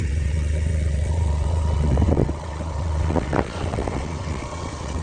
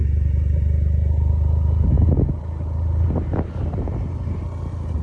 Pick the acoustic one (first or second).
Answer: second